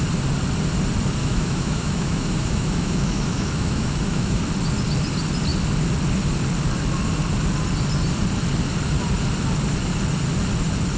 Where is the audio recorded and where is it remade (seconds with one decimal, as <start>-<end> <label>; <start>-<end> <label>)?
0.0-1.2 recorded; 1.2-4.4 remade; 4.4-11.0 recorded